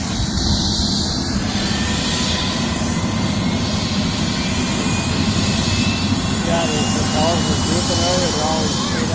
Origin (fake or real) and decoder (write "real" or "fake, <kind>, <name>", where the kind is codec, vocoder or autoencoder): real